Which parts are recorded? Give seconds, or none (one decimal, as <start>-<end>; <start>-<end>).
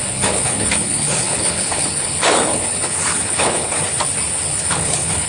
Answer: 3.9-4.5